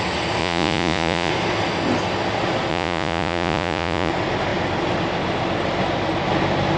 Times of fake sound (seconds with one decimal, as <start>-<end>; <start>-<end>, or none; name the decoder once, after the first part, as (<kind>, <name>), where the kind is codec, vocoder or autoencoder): 0.4-1.3 (vocoder, Vocos); 2.7-4.1